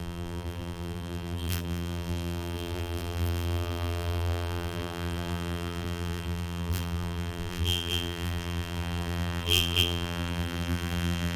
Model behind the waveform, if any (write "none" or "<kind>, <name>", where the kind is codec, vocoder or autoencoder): vocoder, BigVGAN v2